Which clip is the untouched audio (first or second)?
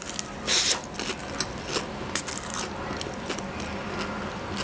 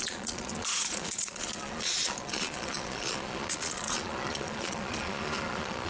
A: first